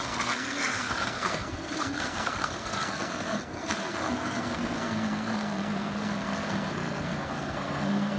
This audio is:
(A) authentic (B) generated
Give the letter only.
B